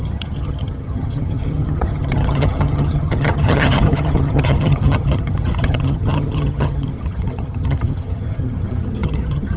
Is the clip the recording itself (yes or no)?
no